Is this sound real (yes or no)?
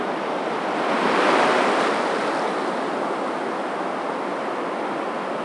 yes